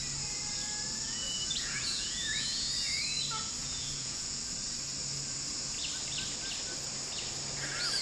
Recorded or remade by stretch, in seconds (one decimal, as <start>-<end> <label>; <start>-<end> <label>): 0.0-1.2 recorded; 1.2-2.7 remade; 2.7-3.6 recorded; 3.6-4.4 remade; 4.4-8.0 recorded

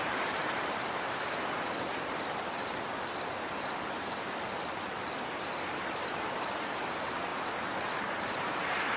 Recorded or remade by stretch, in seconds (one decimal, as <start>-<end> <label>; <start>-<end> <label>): 0.0-0.4 remade; 0.4-5.5 recorded; 5.5-7.3 remade; 7.3-7.9 recorded; 7.9-9.0 remade

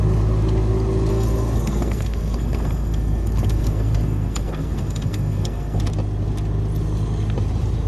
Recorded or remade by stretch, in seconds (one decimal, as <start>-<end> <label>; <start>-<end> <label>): 0.0-1.1 recorded; 1.1-5.8 remade; 5.8-7.9 recorded

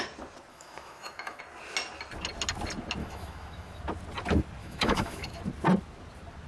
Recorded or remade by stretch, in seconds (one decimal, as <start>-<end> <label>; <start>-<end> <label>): 0.0-0.5 recorded; 0.5-1.4 remade; 1.4-3.0 recorded; 3.0-3.8 remade; 3.8-4.6 recorded; 4.6-5.4 remade; 5.4-6.5 recorded